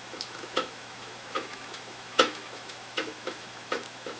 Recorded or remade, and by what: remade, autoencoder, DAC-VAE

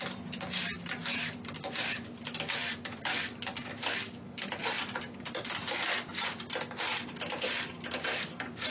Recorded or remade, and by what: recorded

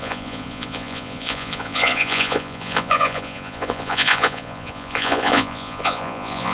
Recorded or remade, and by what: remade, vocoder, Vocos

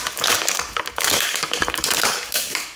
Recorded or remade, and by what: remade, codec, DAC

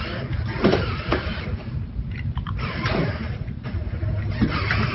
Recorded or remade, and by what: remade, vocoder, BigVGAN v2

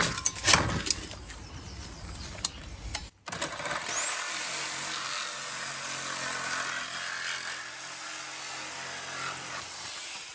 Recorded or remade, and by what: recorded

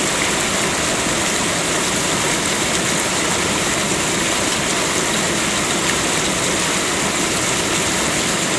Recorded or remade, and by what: recorded